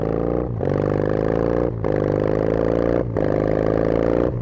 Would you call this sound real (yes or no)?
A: yes